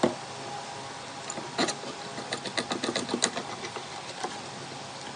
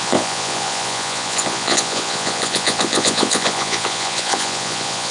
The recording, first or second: first